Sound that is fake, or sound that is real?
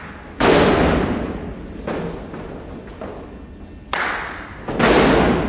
real